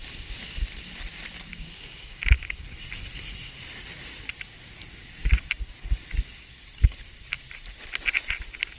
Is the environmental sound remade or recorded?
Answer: recorded